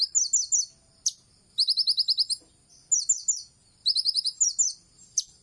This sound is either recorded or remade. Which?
recorded